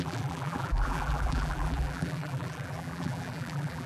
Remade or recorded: remade